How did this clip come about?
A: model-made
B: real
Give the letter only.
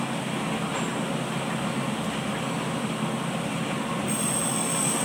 B